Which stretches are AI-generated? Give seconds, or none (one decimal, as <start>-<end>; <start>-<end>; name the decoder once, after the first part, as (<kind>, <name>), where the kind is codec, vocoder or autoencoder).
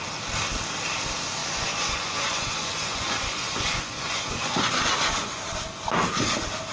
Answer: 1.4-5.4 (vocoder, Vocos)